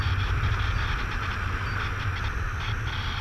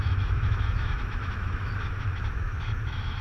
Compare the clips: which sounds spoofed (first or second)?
second